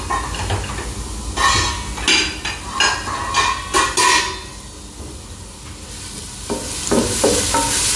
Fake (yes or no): no